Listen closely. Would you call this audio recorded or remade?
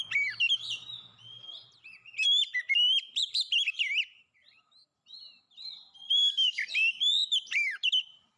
remade